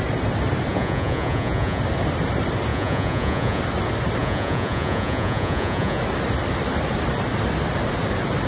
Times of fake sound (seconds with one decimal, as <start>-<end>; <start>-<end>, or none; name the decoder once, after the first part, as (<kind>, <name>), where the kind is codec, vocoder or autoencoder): 0.7-1.8 (vocoder, Vocos); 2.7-3.6; 4.2-6.0